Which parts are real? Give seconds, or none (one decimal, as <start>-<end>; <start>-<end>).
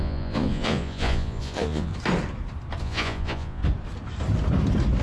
1.9-2.8; 3.6-5.0